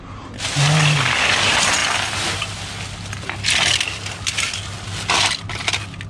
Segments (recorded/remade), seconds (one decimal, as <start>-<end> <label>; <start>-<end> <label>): 0.0-6.1 recorded